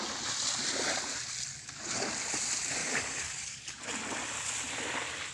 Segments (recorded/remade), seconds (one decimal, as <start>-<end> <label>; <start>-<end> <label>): 0.0-1.5 recorded; 1.5-2.1 remade; 2.1-2.8 recorded; 2.8-3.8 remade; 3.8-5.3 recorded